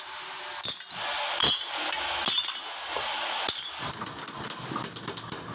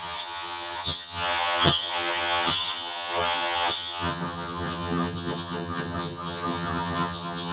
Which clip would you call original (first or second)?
first